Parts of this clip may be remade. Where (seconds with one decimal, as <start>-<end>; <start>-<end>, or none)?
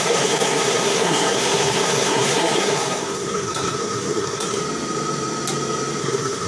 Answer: 0.0-4.6; 6.0-6.5